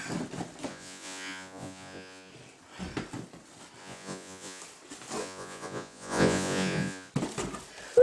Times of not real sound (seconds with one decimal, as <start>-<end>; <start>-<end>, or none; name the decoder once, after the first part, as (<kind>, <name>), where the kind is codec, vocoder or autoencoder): 0.7-2.3 (vocoder, Vocos); 3.8-4.6; 5.2-7.1

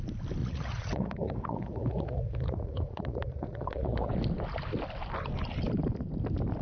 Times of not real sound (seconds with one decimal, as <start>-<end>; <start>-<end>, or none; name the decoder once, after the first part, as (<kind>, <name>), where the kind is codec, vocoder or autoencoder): 0.4-4.1 (vocoder, Vocos)

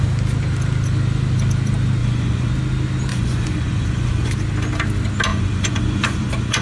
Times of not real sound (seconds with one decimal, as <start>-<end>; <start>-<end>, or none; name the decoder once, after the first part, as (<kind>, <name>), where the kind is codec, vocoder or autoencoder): 2.0-2.5 (vocoder, Vocos); 3.1-4.3; 5.3-6.6

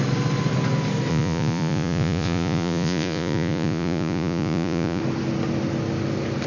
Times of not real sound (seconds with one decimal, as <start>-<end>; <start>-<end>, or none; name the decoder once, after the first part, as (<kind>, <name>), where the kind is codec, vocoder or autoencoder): 1.1-5.0 (vocoder, Vocos)

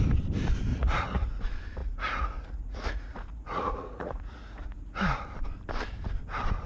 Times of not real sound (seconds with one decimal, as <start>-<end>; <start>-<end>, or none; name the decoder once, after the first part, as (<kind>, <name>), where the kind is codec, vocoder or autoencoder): 0.7-1.4 (vocoder, Vocos); 1.8-5.2

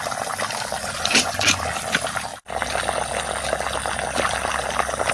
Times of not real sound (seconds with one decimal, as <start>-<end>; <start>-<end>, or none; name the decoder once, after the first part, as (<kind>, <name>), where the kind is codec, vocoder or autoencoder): 0.8-1.6 (vocoder, Vocos)